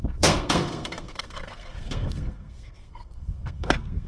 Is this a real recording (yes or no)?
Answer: no